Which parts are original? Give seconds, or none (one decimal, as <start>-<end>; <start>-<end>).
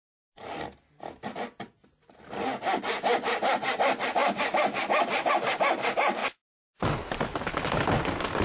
0.0-8.4